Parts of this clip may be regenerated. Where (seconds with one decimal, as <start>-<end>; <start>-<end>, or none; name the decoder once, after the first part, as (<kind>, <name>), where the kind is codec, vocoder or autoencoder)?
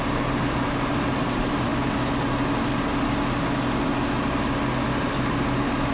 0.0-1.7 (vocoder, BigVGAN v2); 2.2-2.7